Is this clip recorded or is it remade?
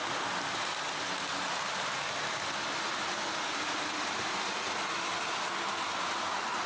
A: recorded